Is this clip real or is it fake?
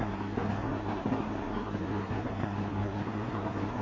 fake